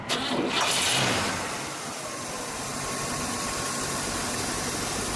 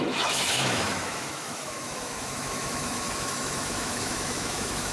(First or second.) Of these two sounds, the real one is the first